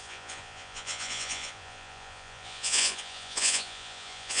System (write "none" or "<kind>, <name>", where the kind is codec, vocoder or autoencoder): vocoder, Vocos